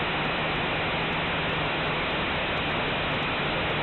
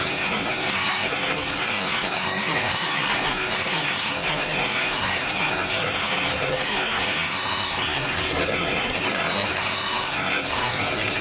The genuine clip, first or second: first